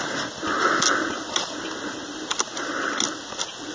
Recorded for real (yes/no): yes